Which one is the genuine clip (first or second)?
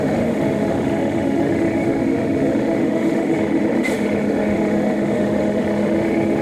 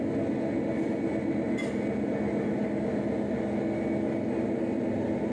second